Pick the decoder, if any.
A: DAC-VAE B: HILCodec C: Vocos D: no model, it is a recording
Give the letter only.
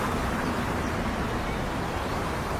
D